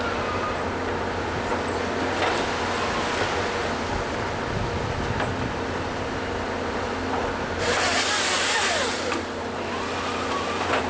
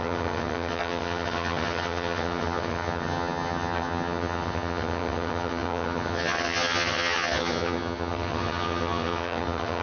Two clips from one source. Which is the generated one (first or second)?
second